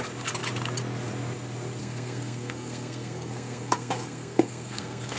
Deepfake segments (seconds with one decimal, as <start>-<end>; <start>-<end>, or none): 1.8-5.2